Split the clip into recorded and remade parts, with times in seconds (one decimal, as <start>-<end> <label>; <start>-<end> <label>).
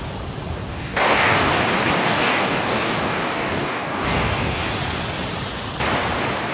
0.0-0.7 recorded; 0.7-1.6 remade; 1.6-2.0 recorded; 2.0-4.7 remade; 4.7-6.5 recorded